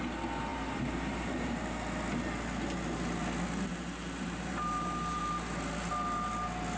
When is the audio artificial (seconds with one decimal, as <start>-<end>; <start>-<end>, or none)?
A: 0.5-1.6; 3.7-5.2